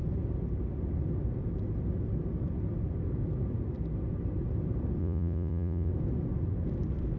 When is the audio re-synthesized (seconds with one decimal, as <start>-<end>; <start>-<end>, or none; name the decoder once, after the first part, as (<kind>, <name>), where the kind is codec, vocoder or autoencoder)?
5.0-5.9 (vocoder, Vocos)

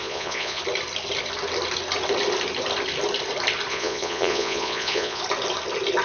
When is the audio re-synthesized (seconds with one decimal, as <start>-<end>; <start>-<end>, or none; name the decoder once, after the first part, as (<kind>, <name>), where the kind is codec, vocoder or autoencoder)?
0.0-0.6 (vocoder, Vocos); 3.7-5.2

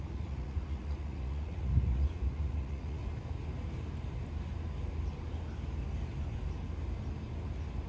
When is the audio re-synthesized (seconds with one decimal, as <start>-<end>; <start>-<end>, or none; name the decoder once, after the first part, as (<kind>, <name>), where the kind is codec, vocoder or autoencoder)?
0.0-3.0 (vocoder, Vocos)

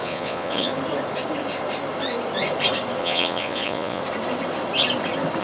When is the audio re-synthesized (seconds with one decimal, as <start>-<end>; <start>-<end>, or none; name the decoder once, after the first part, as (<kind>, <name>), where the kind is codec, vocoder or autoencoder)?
0.0-0.7 (vocoder, Vocos); 3.0-4.0

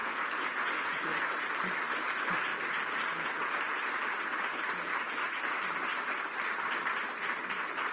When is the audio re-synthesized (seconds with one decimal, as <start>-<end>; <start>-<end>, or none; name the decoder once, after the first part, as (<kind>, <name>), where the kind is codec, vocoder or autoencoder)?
0.0-1.0 (vocoder, Vocos)

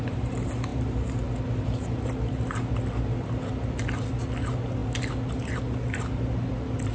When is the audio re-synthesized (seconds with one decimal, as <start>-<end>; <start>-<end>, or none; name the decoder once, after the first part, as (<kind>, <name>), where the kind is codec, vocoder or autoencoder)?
none

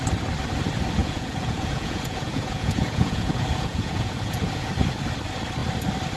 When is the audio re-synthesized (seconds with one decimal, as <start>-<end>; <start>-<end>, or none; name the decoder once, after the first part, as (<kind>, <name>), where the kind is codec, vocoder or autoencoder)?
1.0-4.7 (vocoder, Vocos)